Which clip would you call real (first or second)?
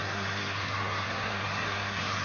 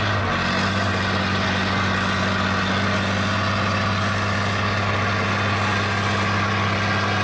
second